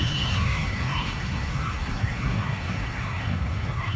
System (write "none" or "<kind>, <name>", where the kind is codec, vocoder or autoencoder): codec, SNAC